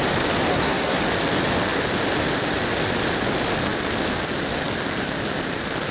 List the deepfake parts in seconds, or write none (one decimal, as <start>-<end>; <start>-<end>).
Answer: 0.5-1.0